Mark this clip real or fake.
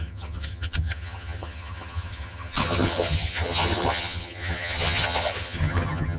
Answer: fake